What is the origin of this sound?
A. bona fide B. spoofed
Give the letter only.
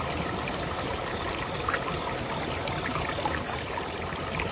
A